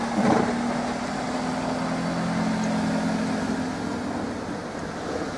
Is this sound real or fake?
real